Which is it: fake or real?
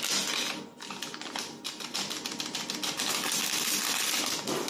real